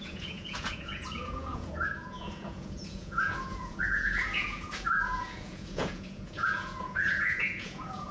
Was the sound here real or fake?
fake